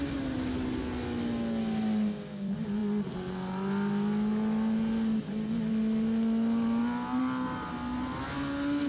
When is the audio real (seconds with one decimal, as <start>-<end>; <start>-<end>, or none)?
0.0-8.9